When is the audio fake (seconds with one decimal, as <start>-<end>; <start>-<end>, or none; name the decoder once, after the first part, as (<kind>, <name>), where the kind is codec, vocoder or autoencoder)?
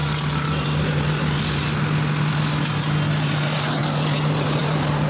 none